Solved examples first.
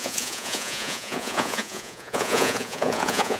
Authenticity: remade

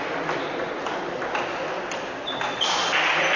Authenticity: recorded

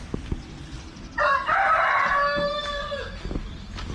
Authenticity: recorded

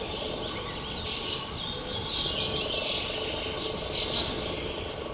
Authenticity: recorded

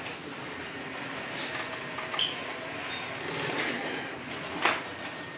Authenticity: recorded